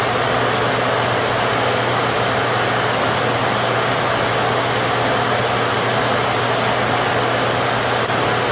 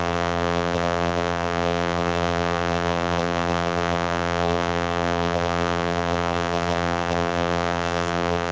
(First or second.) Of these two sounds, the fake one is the second